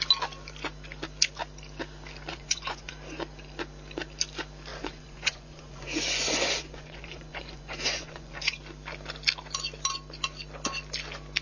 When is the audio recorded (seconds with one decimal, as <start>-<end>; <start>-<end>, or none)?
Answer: 0.0-2.3; 2.9-4.7; 8.6-11.4